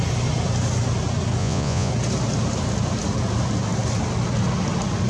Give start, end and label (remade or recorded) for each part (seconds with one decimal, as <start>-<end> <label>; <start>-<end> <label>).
0.0-1.4 recorded; 1.4-1.9 remade; 1.9-5.1 recorded